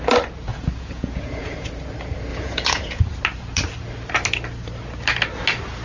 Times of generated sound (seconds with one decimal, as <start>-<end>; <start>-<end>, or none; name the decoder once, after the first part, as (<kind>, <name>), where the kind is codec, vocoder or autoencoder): 0.5-1.7 (vocoder, Vocos); 2.3-3.0